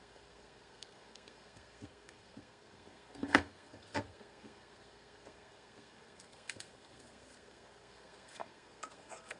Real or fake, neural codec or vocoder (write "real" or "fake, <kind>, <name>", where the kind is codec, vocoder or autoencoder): fake, codec, SNAC